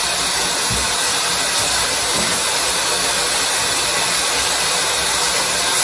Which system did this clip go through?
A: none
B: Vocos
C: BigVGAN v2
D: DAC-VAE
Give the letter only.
A